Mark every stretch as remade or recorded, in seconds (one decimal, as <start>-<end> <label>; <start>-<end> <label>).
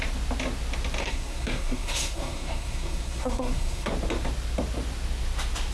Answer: 0.0-1.0 recorded; 1.0-3.9 remade; 3.9-5.7 recorded